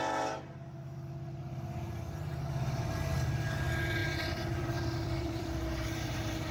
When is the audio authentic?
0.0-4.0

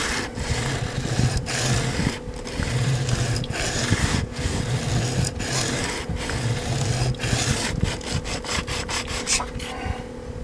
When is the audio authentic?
0.0-4.0; 4.6-10.4

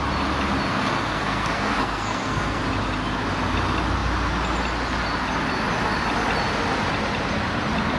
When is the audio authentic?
0.0-0.7; 2.6-8.0